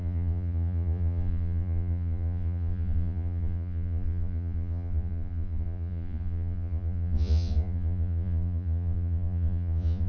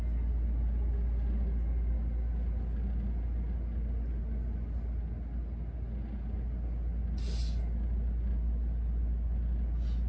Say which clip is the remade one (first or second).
first